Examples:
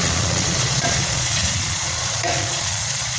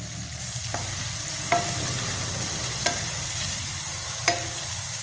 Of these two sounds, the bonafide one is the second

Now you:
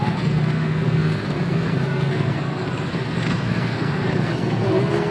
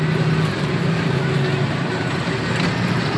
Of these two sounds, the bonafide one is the second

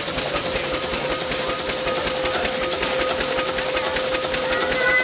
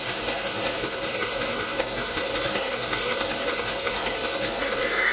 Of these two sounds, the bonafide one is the first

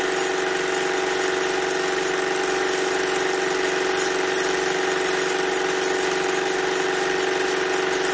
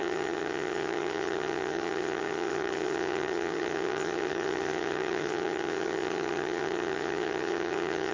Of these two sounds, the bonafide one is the first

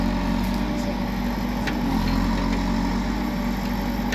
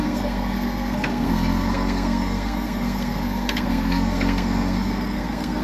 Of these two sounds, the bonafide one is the first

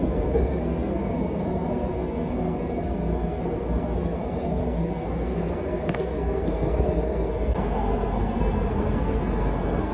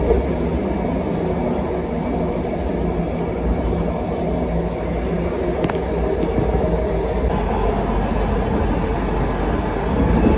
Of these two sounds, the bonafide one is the second